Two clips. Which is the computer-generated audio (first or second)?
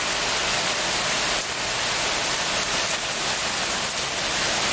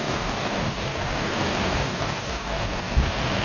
second